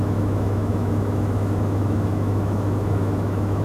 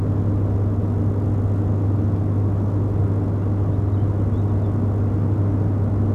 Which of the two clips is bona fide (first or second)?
second